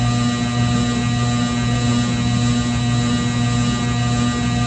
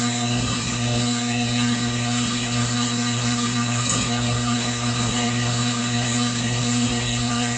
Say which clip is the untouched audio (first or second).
first